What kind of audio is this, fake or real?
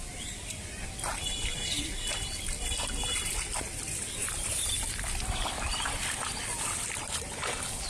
real